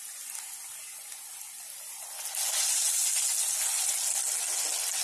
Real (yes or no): yes